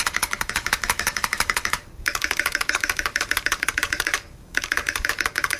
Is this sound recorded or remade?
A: remade